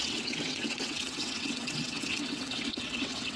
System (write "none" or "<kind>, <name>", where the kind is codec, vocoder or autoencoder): vocoder, WaveNeXt